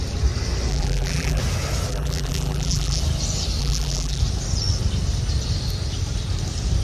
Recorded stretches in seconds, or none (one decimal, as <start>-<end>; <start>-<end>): 0.0-0.7; 1.4-1.9; 3.0-3.6; 4.2-6.8